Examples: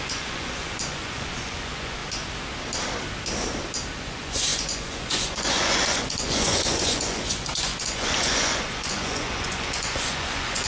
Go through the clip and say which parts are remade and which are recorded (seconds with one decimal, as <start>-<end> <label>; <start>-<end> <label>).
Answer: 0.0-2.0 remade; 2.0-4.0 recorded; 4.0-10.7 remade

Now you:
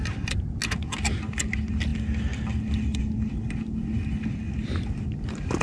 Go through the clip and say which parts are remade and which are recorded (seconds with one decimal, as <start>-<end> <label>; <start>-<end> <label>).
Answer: 0.0-5.6 recorded

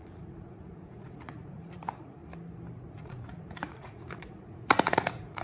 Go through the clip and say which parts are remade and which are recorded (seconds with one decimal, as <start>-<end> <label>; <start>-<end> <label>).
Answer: 0.0-2.2 remade; 2.2-2.9 recorded; 2.9-5.4 remade

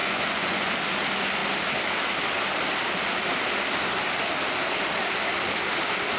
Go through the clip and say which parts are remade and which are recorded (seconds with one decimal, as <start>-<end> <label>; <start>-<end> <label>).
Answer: 0.0-0.7 remade; 0.7-6.2 recorded

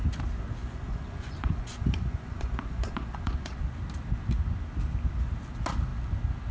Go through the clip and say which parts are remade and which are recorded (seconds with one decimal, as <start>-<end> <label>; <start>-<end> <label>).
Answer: 0.0-0.6 recorded; 0.6-3.6 remade; 3.6-6.5 recorded

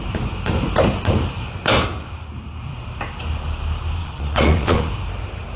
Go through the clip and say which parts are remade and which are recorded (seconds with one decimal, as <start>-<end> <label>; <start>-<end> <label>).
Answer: 0.0-4.0 recorded; 4.0-4.9 remade; 4.9-5.6 recorded